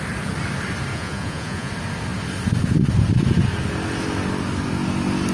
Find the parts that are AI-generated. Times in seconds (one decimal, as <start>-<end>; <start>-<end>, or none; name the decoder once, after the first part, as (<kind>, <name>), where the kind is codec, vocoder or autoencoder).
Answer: 0.9-1.7 (vocoder, Vocos)